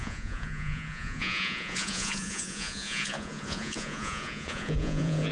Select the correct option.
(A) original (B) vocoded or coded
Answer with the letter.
B